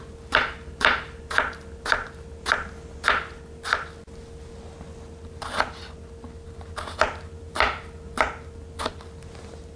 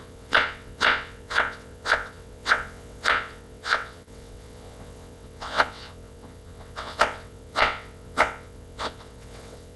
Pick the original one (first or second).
first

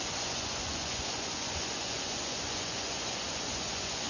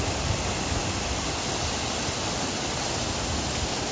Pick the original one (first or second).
second